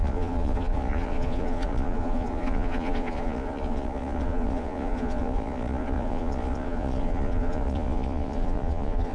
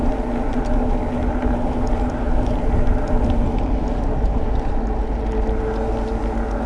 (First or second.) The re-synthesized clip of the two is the first